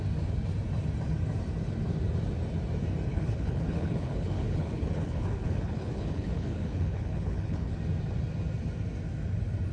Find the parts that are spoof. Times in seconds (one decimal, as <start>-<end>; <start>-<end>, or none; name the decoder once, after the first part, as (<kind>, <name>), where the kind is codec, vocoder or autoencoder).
3.1-7.8 (codec, HILCodec)